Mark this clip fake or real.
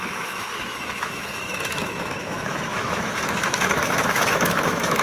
fake